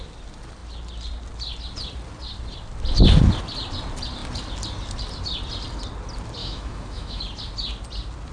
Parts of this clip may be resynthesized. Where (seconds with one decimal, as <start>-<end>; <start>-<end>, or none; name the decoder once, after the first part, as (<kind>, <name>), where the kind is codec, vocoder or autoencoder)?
6.4-7.2 (autoencoder, DAC-VAE)